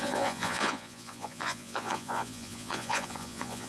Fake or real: fake